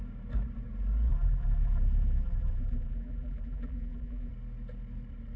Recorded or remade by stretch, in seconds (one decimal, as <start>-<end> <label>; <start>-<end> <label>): 0.0-1.1 recorded; 1.1-4.3 remade; 4.3-5.4 recorded